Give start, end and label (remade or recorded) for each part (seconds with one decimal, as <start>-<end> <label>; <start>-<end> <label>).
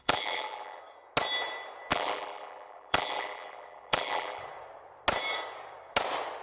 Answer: 0.0-0.8 remade; 0.8-1.9 recorded; 1.9-4.4 remade; 4.4-6.4 recorded